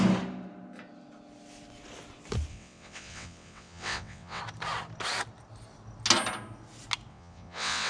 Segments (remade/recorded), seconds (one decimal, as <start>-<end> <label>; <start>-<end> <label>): 0.0-2.5 recorded; 2.5-4.4 remade; 4.4-7.1 recorded; 7.1-7.9 remade